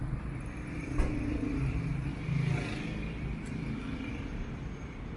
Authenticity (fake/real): real